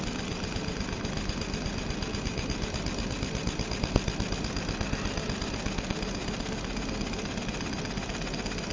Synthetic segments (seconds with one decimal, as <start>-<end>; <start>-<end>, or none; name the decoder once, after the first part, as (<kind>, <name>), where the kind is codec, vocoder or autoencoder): none